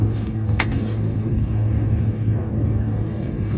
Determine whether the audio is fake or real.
fake